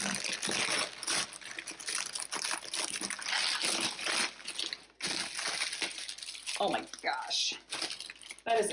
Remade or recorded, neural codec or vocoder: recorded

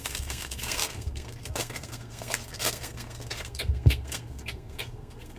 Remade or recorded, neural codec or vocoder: remade, codec, SNAC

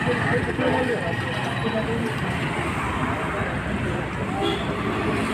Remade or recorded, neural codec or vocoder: recorded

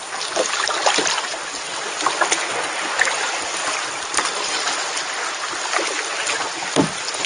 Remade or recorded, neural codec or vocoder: recorded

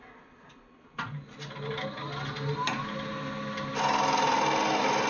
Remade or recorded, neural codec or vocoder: recorded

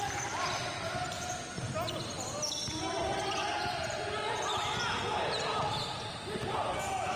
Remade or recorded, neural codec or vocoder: recorded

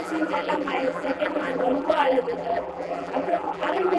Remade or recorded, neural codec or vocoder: remade, vocoder, BigVGAN v2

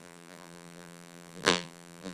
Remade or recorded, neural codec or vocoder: remade, vocoder, BigVGAN v2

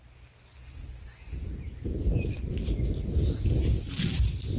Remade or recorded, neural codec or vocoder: recorded